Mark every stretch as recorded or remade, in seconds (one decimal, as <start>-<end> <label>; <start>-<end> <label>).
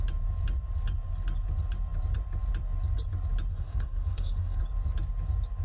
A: 0.0-3.5 recorded; 3.5-4.6 remade; 4.6-5.6 recorded